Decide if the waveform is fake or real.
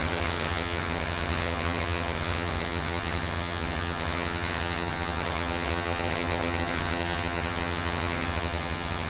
fake